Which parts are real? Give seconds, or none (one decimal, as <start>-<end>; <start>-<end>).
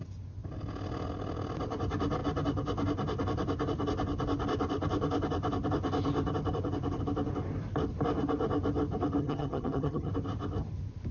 0.0-9.2; 10.1-11.1